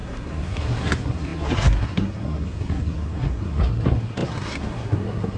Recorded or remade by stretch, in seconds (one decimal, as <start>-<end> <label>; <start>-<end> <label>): 0.0-5.4 remade